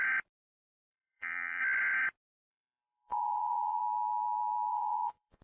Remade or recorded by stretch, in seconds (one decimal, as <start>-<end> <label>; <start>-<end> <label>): 0.0-0.9 recorded; 0.9-1.6 remade; 1.6-2.5 recorded; 2.5-3.8 remade; 3.8-4.7 recorded; 4.7-5.4 remade